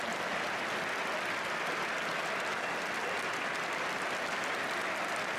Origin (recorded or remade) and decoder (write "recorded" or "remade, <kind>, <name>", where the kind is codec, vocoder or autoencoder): recorded